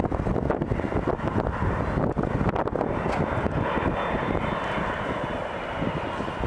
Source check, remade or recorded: recorded